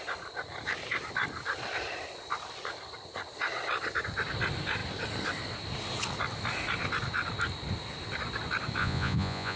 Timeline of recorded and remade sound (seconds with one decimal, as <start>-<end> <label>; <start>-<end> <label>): 0.0-8.8 recorded; 8.8-9.6 remade